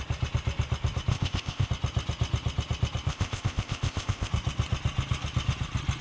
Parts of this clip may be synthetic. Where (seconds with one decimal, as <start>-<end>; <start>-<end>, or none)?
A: 1.1-1.7; 3.1-4.3